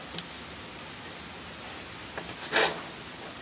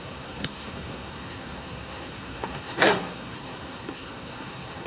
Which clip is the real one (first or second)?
first